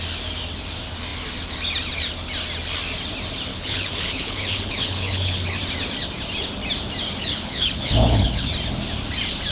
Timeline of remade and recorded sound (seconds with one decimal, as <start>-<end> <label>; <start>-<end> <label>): 0.0-3.5 recorded; 3.5-5.6 remade; 5.6-7.2 recorded; 7.2-8.5 remade; 8.5-9.5 recorded